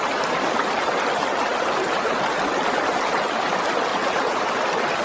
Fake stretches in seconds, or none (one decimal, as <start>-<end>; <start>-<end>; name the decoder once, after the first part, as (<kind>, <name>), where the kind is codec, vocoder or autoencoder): 3.9-4.4 (vocoder, Vocos)